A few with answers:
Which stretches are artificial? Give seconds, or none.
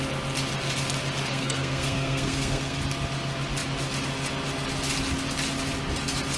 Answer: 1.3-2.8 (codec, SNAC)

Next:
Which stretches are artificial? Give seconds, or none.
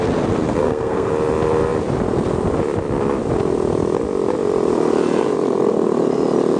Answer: 0.6-1.1 (codec, SNAC)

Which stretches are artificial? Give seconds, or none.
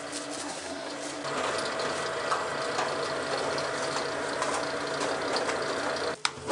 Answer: 0.4-0.9 (codec, SNAC)